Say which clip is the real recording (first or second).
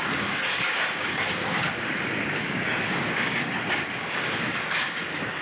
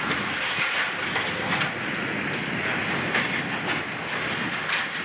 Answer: second